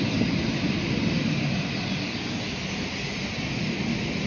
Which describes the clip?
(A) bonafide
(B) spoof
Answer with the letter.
A